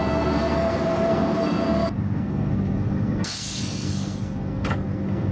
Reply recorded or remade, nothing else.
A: remade